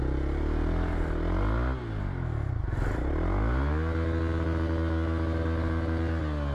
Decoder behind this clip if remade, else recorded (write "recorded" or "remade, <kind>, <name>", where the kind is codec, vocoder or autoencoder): recorded